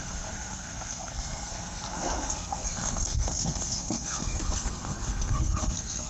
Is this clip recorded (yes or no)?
no